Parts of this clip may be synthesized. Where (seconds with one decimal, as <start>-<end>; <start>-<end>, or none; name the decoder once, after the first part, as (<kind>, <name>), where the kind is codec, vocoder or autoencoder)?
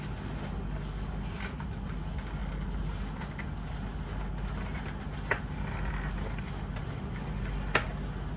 none